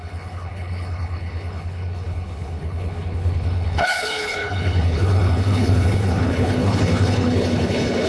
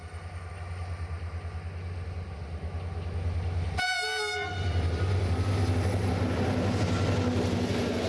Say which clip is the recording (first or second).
second